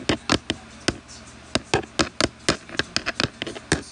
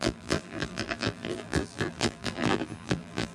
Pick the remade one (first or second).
second